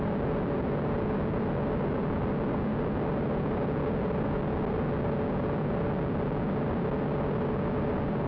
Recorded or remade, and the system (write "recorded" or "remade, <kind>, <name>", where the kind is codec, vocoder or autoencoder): recorded